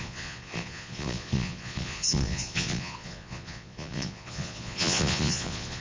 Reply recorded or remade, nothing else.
remade